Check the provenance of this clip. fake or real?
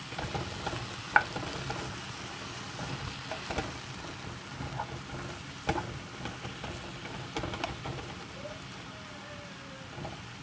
real